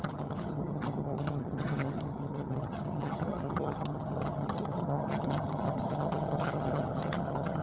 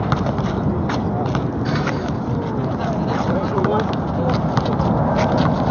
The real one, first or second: second